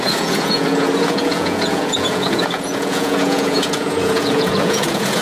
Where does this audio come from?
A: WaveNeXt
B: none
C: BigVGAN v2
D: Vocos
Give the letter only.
D